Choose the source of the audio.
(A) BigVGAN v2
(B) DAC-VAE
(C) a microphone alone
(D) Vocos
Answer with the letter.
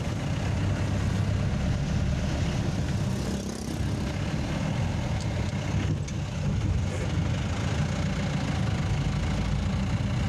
C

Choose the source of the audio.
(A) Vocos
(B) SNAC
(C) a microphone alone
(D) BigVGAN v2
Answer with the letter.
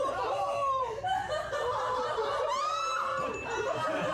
D